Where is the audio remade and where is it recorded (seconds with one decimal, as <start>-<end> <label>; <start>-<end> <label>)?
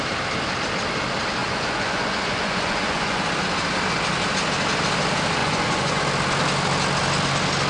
0.0-1.4 recorded; 1.4-3.2 remade; 3.2-5.4 recorded; 5.4-6.0 remade; 6.0-7.7 recorded